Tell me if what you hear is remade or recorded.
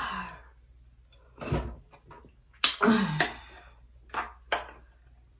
recorded